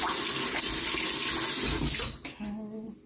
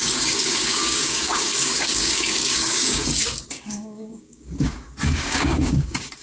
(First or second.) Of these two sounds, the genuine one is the first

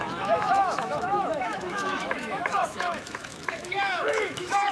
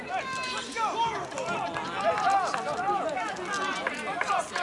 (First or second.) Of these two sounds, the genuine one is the second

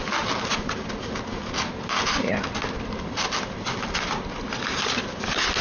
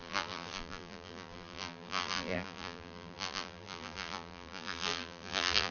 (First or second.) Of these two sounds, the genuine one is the first